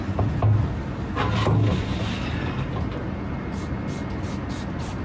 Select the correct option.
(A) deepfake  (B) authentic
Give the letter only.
B